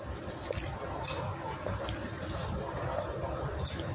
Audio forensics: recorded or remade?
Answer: recorded